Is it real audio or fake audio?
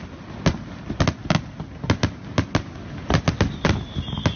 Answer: real